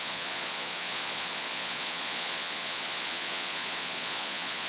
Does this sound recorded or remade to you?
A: remade